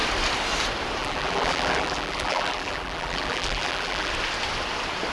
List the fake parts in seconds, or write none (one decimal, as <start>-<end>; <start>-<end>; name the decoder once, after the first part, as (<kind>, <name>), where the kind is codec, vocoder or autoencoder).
1.0-4.1 (vocoder, BigVGAN v2)